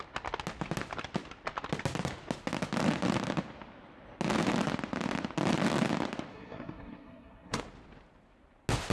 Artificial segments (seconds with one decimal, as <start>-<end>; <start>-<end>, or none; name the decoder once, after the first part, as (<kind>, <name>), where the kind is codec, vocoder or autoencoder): 6.3-7.6 (codec, SNAC)